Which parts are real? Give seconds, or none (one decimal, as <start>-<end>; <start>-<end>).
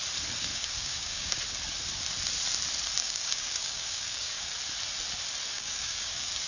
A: 0.0-0.5; 1.4-3.0; 4.5-5.5